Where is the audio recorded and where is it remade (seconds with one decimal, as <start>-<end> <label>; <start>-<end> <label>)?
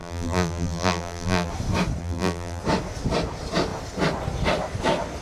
0.0-1.5 remade; 1.5-2.0 recorded; 2.0-2.6 remade; 2.6-5.2 recorded